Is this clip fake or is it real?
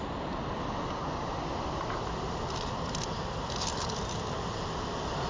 real